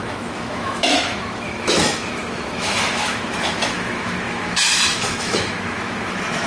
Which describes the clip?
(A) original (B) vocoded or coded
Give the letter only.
B